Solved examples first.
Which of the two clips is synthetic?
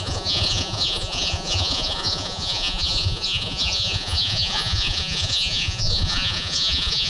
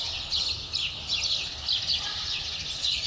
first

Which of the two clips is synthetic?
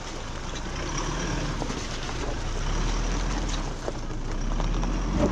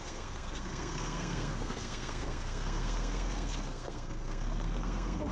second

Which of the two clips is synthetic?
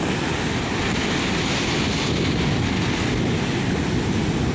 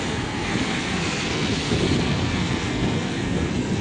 second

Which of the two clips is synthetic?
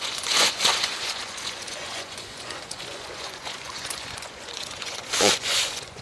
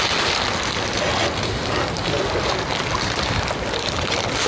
first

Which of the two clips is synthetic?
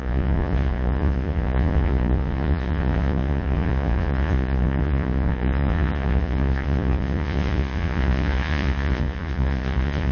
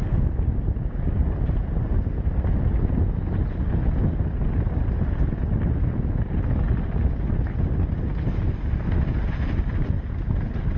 first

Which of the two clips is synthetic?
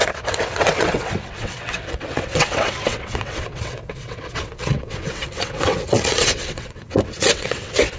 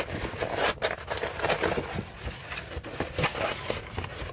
first